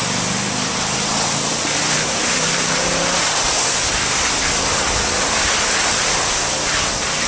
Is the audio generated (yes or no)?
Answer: no